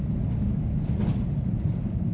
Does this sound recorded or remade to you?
recorded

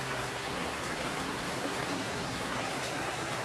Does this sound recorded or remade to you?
remade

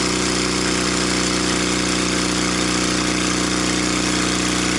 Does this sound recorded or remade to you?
recorded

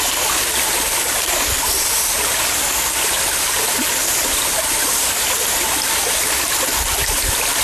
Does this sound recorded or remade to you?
recorded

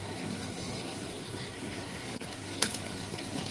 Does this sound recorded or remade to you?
remade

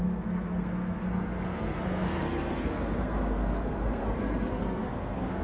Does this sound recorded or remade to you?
remade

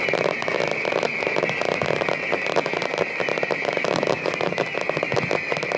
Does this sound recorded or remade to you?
recorded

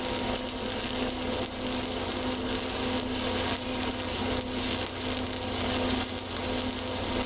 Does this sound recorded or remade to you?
recorded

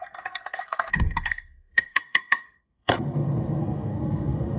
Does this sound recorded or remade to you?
remade